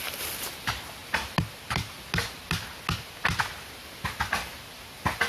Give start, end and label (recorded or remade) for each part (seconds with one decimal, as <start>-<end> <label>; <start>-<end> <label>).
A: 0.0-5.3 recorded